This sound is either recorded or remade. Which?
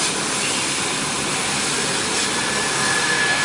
recorded